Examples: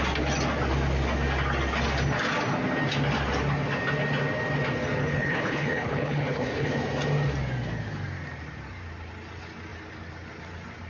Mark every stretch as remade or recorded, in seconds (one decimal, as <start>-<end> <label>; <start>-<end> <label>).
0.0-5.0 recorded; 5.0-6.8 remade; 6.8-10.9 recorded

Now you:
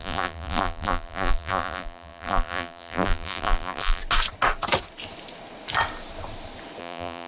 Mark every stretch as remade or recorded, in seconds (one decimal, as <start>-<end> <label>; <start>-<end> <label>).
0.0-4.0 remade; 4.0-6.8 recorded; 6.8-7.3 remade

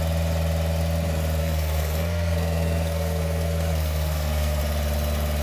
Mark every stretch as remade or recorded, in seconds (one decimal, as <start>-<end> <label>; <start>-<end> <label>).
0.0-1.4 recorded; 1.4-4.6 remade; 4.6-5.4 recorded

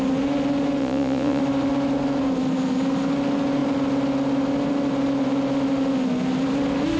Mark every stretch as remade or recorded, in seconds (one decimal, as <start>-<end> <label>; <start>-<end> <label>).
0.0-0.8 recorded; 0.8-1.4 remade; 1.4-7.0 recorded

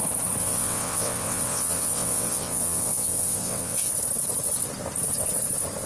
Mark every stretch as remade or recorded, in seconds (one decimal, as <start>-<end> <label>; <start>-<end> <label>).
0.0-0.4 recorded; 0.4-3.9 remade; 3.9-5.9 recorded

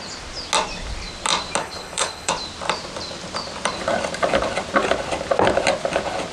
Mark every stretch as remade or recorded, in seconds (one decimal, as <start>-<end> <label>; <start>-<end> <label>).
0.0-1.6 recorded; 1.6-2.3 remade; 2.3-6.3 recorded

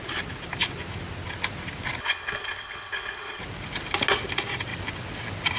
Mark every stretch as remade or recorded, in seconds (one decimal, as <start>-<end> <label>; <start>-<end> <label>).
0.0-2.0 recorded; 2.0-3.4 remade; 3.4-5.6 recorded